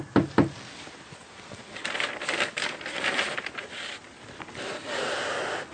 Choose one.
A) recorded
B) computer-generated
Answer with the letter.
A